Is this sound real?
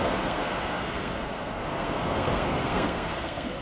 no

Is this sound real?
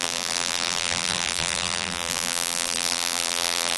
no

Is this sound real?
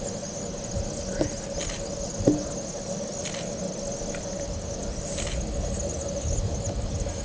yes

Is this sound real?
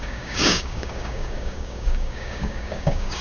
no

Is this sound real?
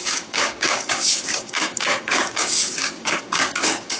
no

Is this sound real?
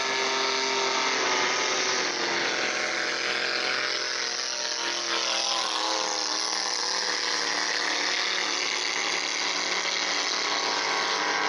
yes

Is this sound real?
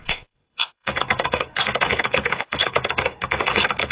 no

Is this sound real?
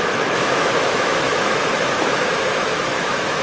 no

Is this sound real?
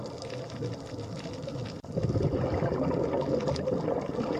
yes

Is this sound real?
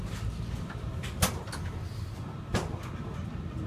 yes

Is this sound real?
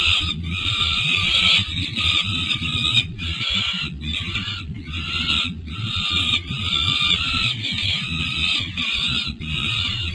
no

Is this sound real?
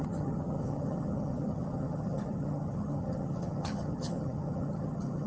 no